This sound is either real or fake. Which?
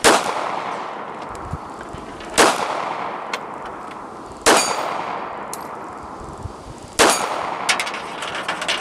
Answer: real